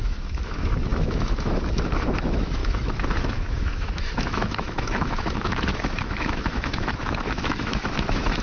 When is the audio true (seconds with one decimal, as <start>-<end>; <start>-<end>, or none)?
none